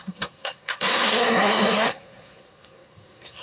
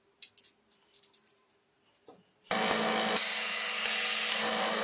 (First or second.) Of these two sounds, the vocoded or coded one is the first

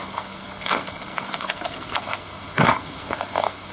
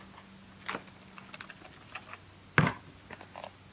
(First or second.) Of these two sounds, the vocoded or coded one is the first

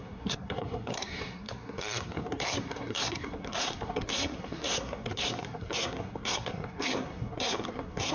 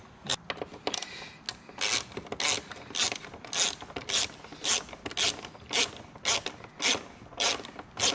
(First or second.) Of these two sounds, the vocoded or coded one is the first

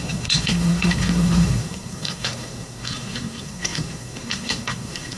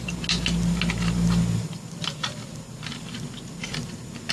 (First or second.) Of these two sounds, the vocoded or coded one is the first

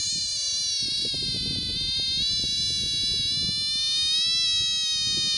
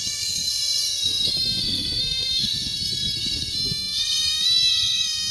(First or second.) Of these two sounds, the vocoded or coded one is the second